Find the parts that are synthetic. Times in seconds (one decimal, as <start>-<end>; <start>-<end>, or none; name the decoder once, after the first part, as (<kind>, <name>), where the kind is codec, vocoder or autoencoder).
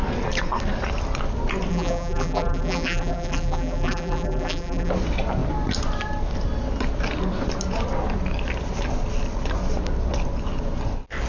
1.7-4.9 (vocoder, BigVGAN v2)